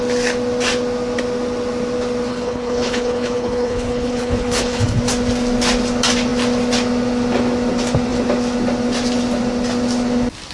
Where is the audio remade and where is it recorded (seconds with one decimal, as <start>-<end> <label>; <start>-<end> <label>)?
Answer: 0.0-2.3 recorded; 2.3-5.0 remade; 5.0-10.5 recorded